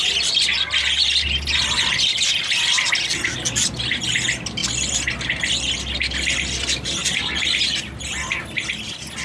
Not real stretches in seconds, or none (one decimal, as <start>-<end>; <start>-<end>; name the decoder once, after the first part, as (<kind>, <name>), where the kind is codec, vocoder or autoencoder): none